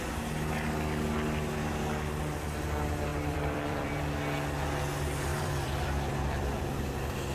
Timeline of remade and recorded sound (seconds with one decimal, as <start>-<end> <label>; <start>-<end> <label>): 0.0-3.1 recorded; 3.1-3.9 remade; 3.9-5.3 recorded; 5.3-6.4 remade; 6.4-7.3 recorded